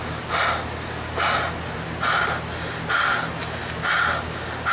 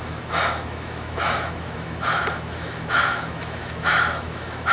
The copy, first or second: second